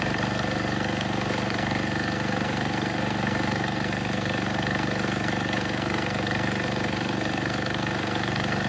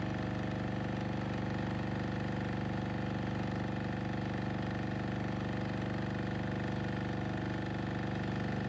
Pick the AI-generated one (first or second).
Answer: first